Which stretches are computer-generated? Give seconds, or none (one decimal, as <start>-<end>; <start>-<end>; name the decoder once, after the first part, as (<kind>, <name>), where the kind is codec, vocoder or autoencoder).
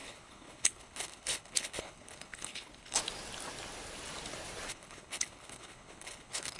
0.0-3.0 (codec, HILCodec); 4.7-6.6